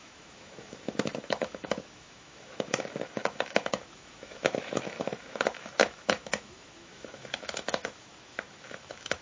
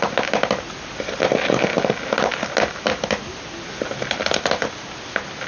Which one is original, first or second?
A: second